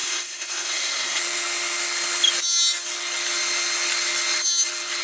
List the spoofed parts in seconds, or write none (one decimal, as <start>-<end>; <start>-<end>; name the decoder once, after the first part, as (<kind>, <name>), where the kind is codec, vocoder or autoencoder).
0.0-1.2 (codec, SNAC)